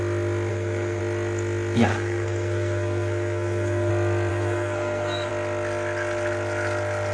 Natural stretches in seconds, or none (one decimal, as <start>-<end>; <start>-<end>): 0.0-0.5; 1.0-1.9; 3.9-4.3; 5.3-7.1